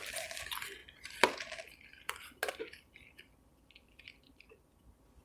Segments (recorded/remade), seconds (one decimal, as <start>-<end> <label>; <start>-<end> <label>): 0.0-5.2 recorded